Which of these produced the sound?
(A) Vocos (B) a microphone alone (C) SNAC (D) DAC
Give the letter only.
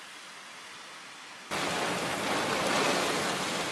B